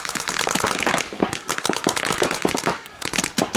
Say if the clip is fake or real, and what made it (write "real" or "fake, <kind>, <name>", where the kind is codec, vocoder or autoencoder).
fake, codec, DAC